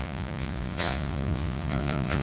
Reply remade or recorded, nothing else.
remade